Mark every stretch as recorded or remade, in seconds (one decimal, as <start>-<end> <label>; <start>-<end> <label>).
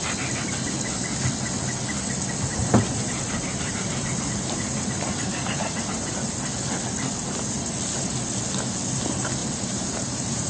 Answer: 0.0-2.5 recorded; 2.5-6.2 remade; 6.2-9.4 recorded; 9.4-10.5 remade